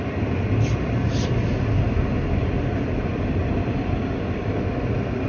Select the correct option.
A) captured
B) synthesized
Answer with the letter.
A